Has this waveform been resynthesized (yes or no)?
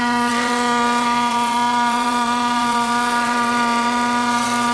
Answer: yes